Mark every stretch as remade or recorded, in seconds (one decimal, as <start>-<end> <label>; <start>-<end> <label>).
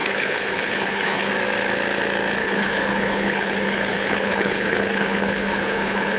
0.0-1.3 remade; 1.3-2.4 recorded; 2.4-6.2 remade